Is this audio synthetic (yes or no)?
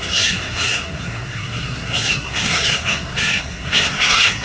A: yes